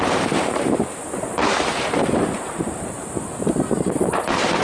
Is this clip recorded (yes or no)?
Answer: no